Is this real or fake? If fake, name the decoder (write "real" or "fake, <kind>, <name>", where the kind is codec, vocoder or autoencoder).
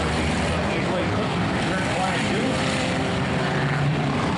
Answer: fake, vocoder, BigVGAN v2